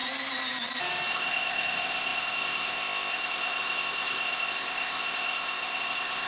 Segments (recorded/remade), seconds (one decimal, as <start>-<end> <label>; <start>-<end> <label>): 0.0-1.1 recorded; 1.1-6.3 remade